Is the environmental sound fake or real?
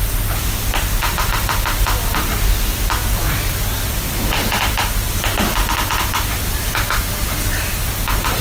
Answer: fake